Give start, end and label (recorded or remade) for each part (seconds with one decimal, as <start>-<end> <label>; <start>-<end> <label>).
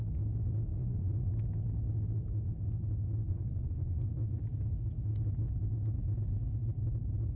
0.0-0.8 recorded; 0.8-1.3 remade; 1.3-3.3 recorded; 3.3-4.4 remade; 4.4-7.4 recorded